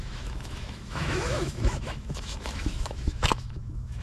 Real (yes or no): no